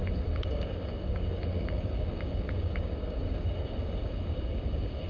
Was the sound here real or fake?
fake